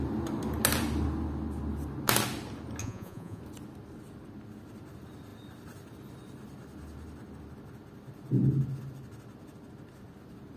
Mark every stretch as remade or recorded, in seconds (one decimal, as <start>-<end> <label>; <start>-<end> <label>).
0.0-2.8 recorded; 2.8-3.4 remade; 3.4-10.6 recorded